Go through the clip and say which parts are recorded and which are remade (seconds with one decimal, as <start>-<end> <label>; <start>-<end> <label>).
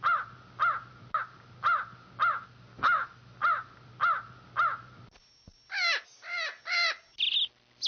0.0-2.7 recorded; 2.7-3.4 remade; 3.4-7.9 recorded